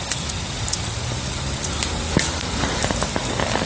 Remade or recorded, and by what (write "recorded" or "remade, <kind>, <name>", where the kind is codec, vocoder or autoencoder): recorded